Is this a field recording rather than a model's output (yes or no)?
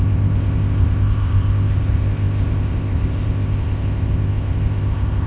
no